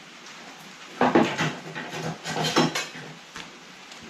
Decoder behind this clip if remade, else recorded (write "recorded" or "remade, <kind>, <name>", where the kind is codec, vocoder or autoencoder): recorded